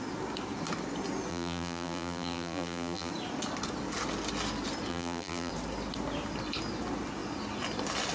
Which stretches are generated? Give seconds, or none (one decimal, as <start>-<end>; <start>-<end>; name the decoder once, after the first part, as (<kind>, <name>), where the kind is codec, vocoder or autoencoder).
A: 1.3-3.1 (vocoder, BigVGAN v2); 4.9-5.5